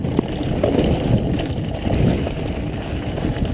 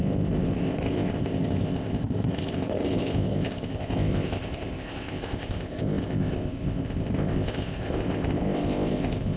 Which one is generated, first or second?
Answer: second